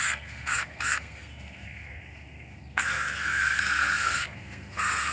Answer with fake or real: fake